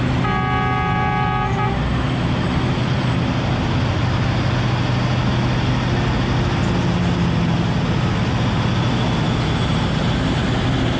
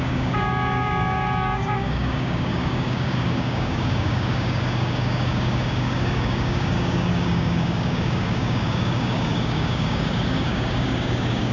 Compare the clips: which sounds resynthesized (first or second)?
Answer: second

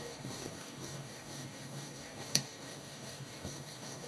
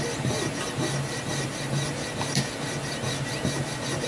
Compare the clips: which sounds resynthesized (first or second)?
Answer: first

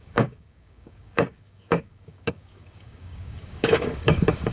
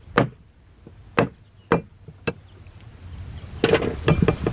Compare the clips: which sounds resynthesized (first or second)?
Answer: first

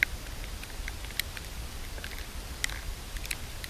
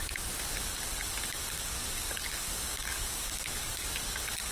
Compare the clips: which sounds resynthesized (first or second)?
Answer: second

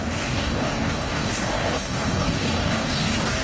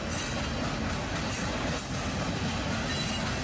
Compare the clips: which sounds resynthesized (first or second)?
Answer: first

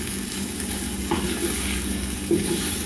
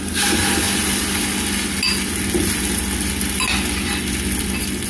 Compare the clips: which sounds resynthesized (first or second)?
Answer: first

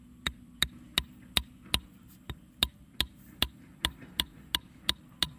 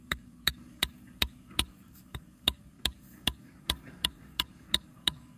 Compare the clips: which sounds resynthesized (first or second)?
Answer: second